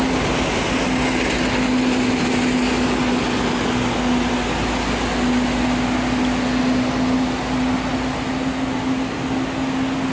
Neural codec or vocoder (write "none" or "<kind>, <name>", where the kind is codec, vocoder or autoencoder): none